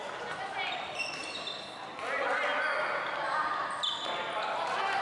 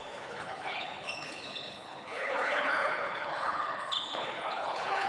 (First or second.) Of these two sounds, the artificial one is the second